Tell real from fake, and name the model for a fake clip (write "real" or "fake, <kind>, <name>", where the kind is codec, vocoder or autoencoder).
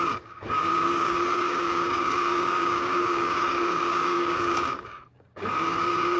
fake, codec, DAC